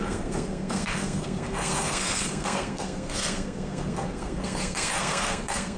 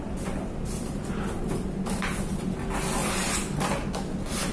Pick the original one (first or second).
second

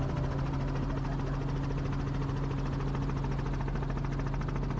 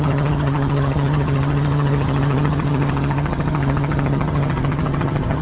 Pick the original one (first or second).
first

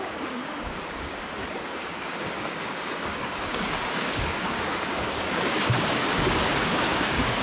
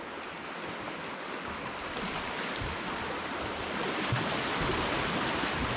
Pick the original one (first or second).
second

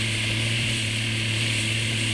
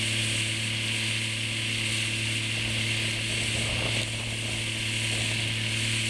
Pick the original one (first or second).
second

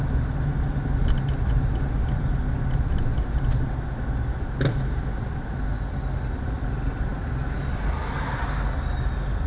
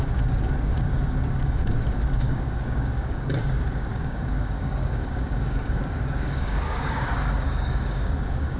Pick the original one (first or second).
first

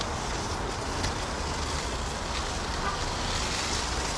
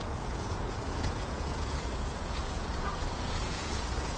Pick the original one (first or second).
first